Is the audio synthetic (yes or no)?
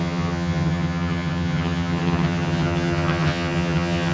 yes